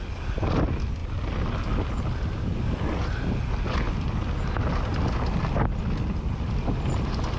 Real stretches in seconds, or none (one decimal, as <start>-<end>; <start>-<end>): 0.0-7.4

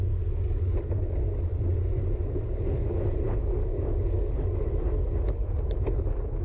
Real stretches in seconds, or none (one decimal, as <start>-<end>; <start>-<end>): 0.0-6.4

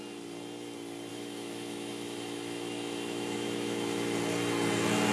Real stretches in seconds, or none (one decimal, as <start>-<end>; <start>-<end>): 0.0-1.1; 4.2-5.1

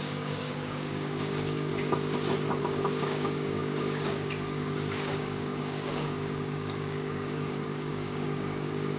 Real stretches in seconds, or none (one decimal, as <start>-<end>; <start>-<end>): 1.7-2.6

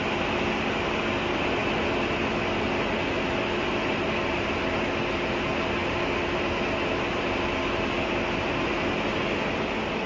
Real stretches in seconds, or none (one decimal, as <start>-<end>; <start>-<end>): 0.0-10.1

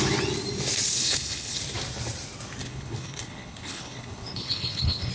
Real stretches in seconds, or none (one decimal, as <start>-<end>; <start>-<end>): 0.0-0.9; 1.6-2.6